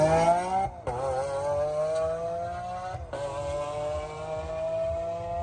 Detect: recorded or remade recorded